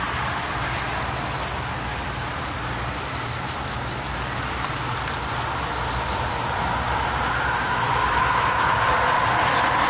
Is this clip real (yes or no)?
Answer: yes